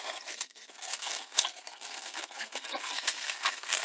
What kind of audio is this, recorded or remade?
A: remade